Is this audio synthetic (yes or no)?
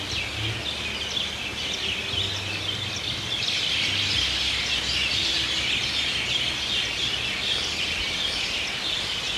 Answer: no